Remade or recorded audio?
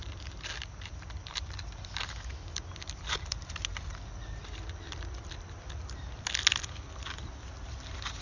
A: recorded